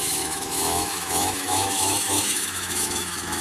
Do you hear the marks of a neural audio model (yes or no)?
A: yes